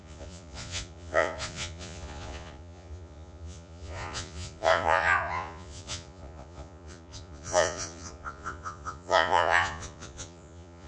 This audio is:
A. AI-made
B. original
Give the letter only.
A